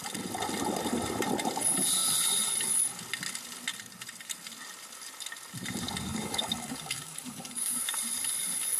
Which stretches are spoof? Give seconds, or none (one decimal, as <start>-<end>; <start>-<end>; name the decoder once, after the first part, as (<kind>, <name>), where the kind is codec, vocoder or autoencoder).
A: 6.1-7.8 (codec, DAC)